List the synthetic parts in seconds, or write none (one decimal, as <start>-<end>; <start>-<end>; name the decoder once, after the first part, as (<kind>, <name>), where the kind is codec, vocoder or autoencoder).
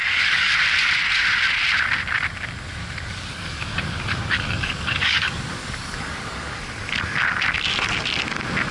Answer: 0.0-0.5 (codec, DAC); 2.8-6.6